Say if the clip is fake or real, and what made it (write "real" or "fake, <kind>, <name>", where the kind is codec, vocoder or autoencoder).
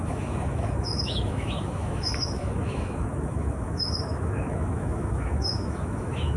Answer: fake, autoencoder, DAC-VAE